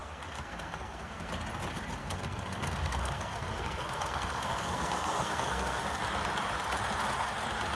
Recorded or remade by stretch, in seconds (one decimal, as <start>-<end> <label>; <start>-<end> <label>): 0.0-1.3 remade; 1.3-2.0 recorded; 2.0-6.0 remade; 6.0-7.7 recorded